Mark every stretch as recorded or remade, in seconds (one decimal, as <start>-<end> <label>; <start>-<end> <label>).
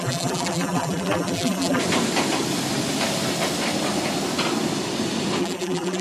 0.0-1.8 remade; 1.8-5.4 recorded; 5.4-6.0 remade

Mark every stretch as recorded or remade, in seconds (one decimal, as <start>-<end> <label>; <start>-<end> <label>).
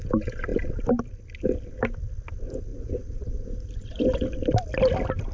0.0-0.5 recorded; 0.5-1.0 remade; 1.0-2.7 recorded; 2.7-4.5 remade; 4.5-5.3 recorded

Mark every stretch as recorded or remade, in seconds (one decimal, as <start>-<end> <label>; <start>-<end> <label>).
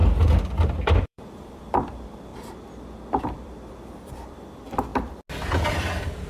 0.0-1.0 recorded; 1.0-2.3 remade; 2.3-3.2 recorded; 3.2-4.9 remade; 4.9-5.8 recorded; 5.8-6.3 remade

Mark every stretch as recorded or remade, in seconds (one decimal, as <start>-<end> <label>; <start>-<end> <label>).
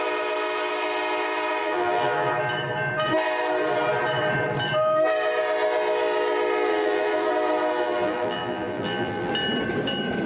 0.0-1.6 recorded; 1.6-2.3 remade; 2.3-6.7 recorded; 6.7-7.3 remade; 7.3-7.7 recorded; 7.7-9.3 remade; 9.3-10.3 recorded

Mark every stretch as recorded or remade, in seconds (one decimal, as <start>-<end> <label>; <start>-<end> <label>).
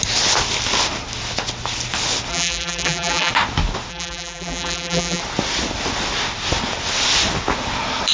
0.0-2.3 recorded; 2.3-3.3 remade; 3.3-3.9 recorded; 3.9-5.2 remade; 5.2-8.1 recorded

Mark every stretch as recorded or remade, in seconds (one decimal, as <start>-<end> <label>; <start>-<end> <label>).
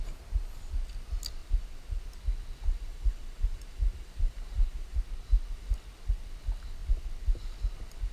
0.0-1.4 recorded; 1.4-2.0 remade; 2.0-2.9 recorded; 2.9-5.0 remade; 5.0-8.1 recorded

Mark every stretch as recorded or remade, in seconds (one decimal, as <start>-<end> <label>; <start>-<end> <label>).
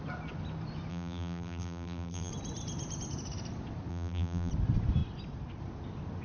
0.0-0.9 recorded; 0.9-2.3 remade; 2.3-3.9 recorded; 3.9-4.5 remade; 4.5-6.2 recorded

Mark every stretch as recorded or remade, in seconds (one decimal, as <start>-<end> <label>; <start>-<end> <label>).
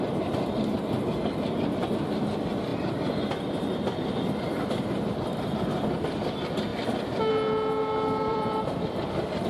0.0-2.7 recorded; 2.7-5.1 remade; 5.1-8.3 recorded; 8.3-9.0 remade; 9.0-9.5 recorded